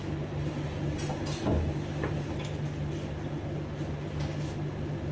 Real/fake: real